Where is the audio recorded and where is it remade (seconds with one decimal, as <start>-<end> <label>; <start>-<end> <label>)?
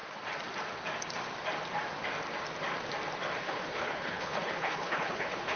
0.0-3.4 recorded; 3.4-5.6 remade